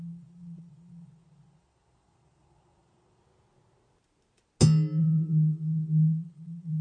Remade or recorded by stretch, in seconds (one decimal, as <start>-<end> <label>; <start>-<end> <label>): 0.0-3.2 remade; 3.2-5.0 recorded; 5.0-6.8 remade

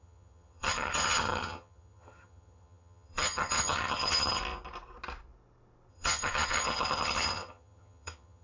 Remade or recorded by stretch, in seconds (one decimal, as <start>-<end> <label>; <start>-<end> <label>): 0.0-4.4 remade; 4.4-5.9 recorded; 5.9-8.4 remade

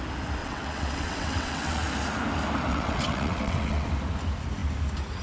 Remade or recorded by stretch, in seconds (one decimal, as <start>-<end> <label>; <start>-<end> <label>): 0.0-0.4 recorded; 0.4-1.8 remade; 1.8-2.7 recorded; 2.7-3.9 remade; 3.9-5.2 recorded

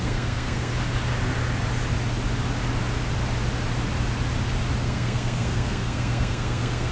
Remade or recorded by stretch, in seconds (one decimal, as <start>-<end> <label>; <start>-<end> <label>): 0.0-0.7 remade; 0.7-4.8 recorded; 4.8-6.9 remade

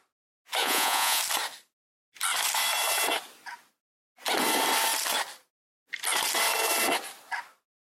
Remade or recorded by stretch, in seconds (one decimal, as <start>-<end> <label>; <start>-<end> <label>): 0.0-0.6 recorded; 0.6-1.2 remade; 1.2-7.9 recorded